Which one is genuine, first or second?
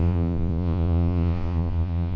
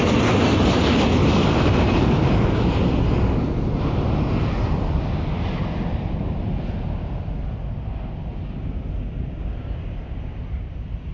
second